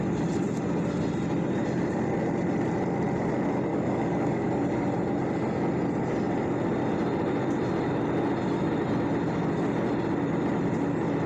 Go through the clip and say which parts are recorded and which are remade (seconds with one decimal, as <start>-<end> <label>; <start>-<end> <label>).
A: 0.0-3.7 recorded; 3.7-4.5 remade; 4.5-11.3 recorded